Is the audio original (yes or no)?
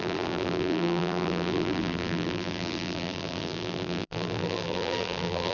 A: no